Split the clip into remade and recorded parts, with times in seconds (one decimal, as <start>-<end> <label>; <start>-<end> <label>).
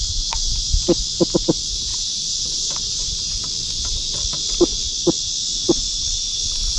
0.0-0.5 recorded; 0.5-1.0 remade; 1.0-1.9 recorded; 1.9-3.4 remade; 3.4-6.8 recorded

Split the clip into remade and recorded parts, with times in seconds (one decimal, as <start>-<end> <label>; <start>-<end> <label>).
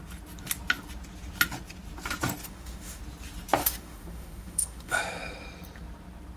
0.0-2.4 recorded; 2.4-3.0 remade; 3.0-3.6 recorded; 3.6-5.0 remade; 5.0-6.4 recorded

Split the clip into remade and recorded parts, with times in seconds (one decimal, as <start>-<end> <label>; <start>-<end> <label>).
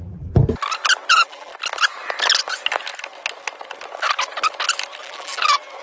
0.0-0.4 remade; 0.4-1.1 recorded; 1.1-1.5 remade; 1.5-5.0 recorded; 5.0-5.8 remade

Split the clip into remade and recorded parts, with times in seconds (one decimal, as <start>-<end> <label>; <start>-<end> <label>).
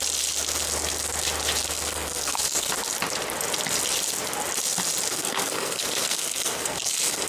0.0-1.6 recorded; 1.6-2.7 remade; 2.7-5.1 recorded; 5.1-7.3 remade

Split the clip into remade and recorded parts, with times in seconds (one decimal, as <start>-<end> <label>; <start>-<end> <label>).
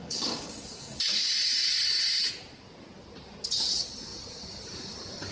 0.0-1.3 remade; 1.3-5.3 recorded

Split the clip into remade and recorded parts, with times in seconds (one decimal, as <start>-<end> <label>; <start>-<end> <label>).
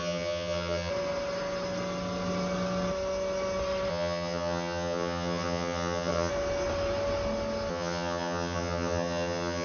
0.0-0.9 remade; 0.9-3.9 recorded; 3.9-6.3 remade; 6.3-7.7 recorded; 7.7-9.6 remade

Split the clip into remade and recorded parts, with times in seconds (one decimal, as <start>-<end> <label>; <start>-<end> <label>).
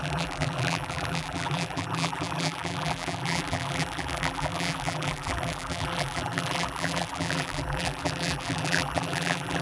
0.0-9.6 remade